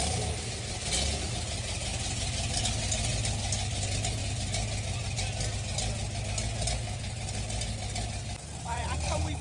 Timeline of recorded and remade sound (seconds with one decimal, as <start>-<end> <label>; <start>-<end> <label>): 0.0-9.4 recorded